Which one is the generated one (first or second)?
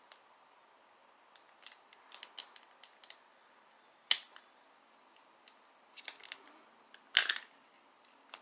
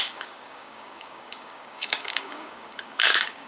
second